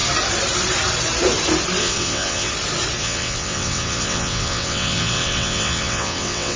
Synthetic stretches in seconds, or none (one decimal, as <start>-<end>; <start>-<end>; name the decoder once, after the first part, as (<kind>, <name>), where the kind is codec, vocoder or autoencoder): 1.8-2.5 (vocoder, WaveNeXt); 3.0-6.6